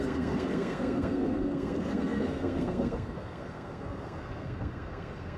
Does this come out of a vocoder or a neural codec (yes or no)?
yes